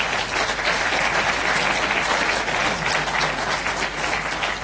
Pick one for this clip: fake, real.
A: real